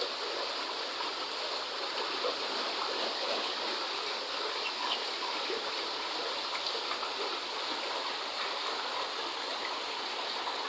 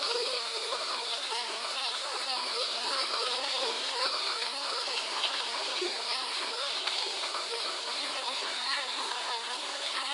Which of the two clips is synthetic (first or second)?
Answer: second